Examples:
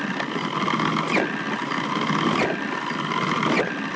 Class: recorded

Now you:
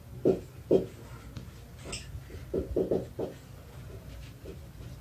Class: recorded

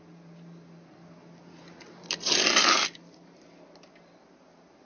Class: recorded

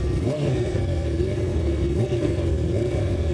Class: remade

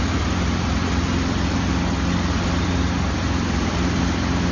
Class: recorded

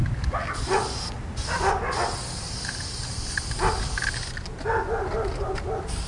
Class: recorded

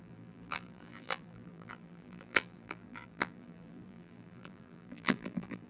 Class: remade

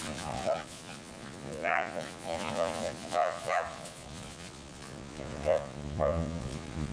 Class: remade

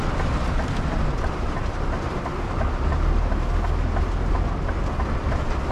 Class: recorded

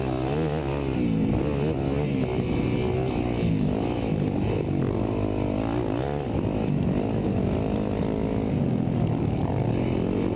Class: recorded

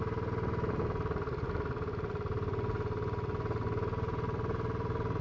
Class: recorded